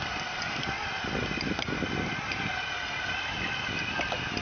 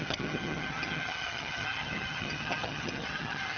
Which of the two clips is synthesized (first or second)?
second